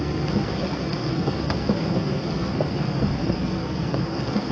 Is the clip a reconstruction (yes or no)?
yes